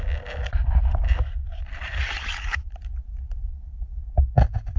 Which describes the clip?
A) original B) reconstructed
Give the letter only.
A